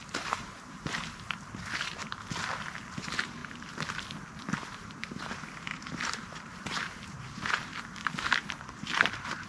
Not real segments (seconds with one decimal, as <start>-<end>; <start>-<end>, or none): 0.0-2.0; 3.0-3.4; 4.7-9.5

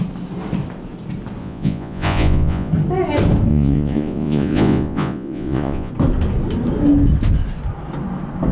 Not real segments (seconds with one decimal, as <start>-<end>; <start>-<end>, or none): 1.4-2.7; 3.5-5.9

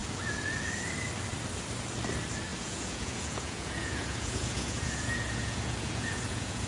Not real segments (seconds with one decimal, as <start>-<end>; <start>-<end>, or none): 2.5-6.7

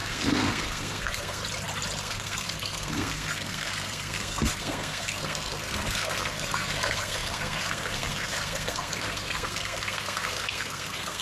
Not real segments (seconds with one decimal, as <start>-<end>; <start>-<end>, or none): 0.0-1.4; 2.0-11.2

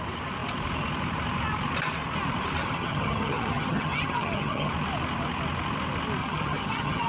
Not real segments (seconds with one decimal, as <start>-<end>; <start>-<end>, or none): 2.6-4.7; 6.2-7.1

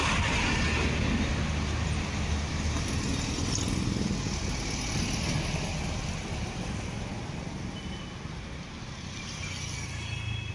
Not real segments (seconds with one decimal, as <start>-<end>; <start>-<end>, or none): none

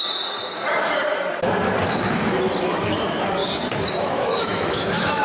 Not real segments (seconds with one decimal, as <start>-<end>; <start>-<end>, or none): 2.6-3.4; 4.0-5.2

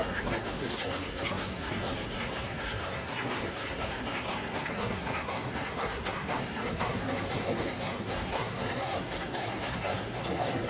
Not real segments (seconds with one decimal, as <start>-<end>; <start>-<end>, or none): 0.0-10.7